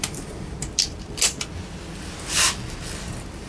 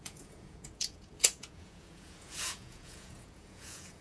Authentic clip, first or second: first